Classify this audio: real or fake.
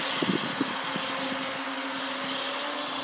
real